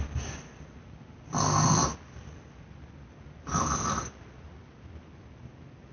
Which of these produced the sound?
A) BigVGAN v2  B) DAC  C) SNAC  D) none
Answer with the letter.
D